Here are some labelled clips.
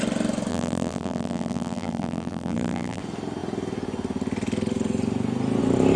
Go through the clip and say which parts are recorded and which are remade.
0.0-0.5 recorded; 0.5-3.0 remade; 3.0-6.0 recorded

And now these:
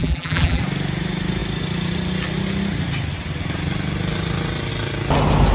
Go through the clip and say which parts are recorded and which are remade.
0.0-0.6 remade; 0.6-5.5 recorded